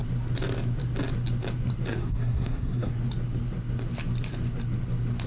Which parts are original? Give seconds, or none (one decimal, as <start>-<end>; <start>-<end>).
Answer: 0.0-1.9; 2.9-5.3